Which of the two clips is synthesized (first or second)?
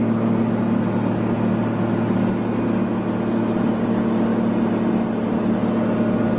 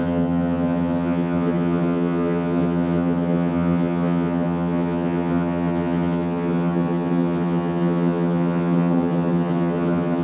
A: second